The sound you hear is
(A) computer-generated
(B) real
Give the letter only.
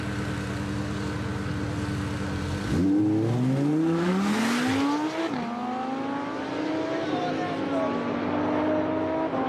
B